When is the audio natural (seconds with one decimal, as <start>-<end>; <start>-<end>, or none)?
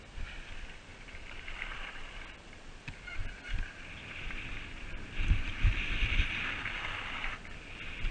0.0-8.1